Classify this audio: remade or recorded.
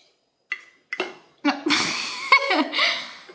recorded